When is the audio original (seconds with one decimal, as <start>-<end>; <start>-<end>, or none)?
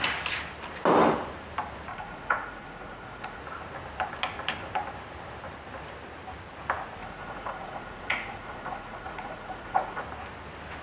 0.0-1.9; 3.4-7.0; 10.0-10.8